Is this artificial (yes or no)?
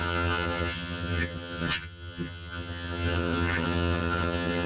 yes